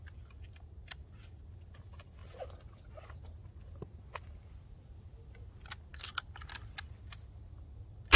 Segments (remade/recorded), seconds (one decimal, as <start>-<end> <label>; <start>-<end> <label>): 0.0-8.2 recorded